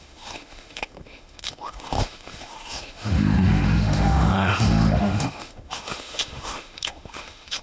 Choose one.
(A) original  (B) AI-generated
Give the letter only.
B